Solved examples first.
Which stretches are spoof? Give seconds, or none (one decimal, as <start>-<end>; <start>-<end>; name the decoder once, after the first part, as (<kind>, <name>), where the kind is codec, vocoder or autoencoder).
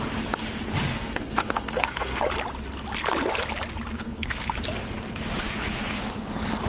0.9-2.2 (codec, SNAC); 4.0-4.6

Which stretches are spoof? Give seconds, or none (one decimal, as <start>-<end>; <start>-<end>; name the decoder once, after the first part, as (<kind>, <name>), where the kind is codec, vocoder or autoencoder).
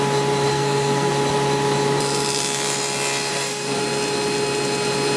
0.5-1.1 (codec, SNAC); 3.3-3.8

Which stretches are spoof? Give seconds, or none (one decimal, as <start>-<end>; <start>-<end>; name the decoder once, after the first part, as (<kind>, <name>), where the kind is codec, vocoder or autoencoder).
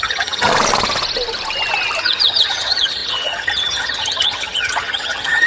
0.0-0.5 (vocoder, HiFi-GAN); 2.0-5.5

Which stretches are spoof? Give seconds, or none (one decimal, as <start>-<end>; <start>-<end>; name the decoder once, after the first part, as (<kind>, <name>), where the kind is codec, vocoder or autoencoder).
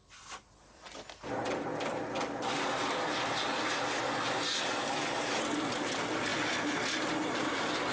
none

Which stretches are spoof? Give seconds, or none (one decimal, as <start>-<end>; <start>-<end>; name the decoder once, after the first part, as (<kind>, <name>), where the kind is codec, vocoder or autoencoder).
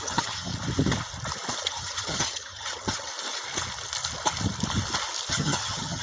0.0-0.5 (vocoder, HiFi-GAN); 1.6-3.1; 5.3-6.0